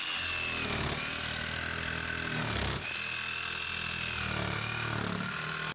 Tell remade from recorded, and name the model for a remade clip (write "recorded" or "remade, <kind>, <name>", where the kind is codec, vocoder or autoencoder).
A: recorded